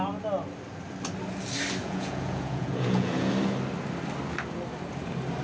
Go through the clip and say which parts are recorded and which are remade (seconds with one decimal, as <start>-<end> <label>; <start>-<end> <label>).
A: 0.0-1.8 recorded; 1.8-3.3 remade; 3.3-5.4 recorded